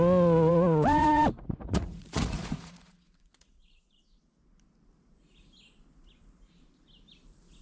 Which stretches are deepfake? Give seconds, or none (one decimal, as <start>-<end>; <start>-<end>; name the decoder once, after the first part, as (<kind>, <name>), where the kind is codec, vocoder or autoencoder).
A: 0.5-4.2 (vocoder, Vocos)